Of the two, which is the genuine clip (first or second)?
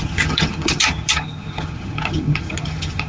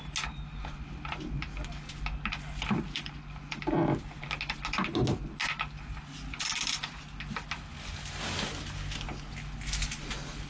second